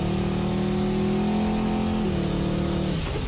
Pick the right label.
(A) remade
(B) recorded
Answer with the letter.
B